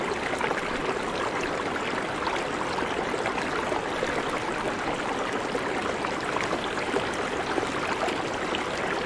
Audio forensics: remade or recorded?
recorded